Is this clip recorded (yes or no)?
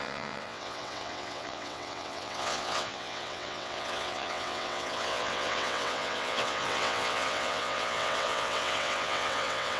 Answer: no